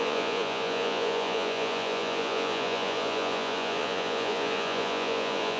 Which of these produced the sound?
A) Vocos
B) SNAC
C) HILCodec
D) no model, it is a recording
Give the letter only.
A